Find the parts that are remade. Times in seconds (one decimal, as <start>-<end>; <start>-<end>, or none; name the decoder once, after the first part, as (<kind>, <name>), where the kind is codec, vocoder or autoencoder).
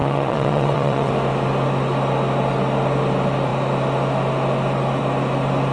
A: 0.0-1.1 (vocoder, WaveNeXt)